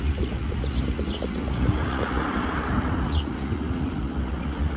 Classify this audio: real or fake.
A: fake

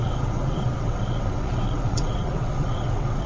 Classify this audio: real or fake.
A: fake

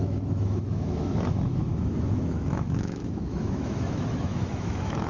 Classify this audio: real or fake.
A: fake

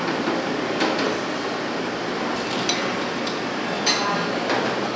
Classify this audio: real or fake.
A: real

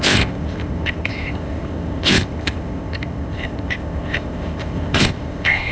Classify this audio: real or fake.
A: fake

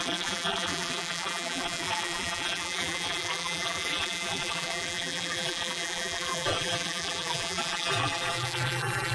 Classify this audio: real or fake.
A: fake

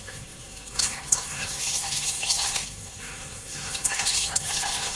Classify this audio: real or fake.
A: fake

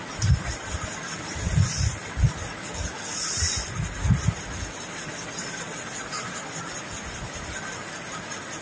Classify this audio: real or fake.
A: real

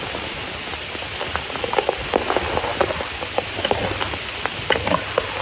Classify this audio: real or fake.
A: real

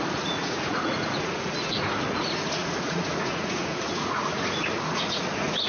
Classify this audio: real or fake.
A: fake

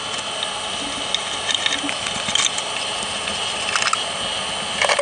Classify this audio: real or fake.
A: real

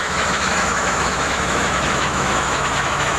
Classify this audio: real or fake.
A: fake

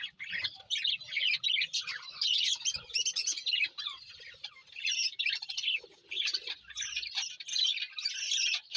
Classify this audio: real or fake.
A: fake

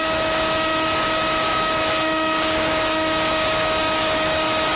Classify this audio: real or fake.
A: fake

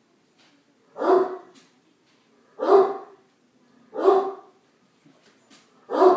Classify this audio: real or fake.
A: real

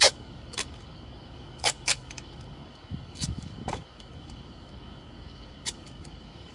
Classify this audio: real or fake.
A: fake